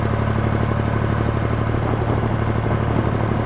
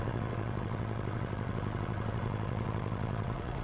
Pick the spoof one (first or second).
second